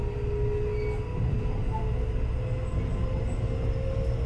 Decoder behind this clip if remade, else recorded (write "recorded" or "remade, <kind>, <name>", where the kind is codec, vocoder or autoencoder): recorded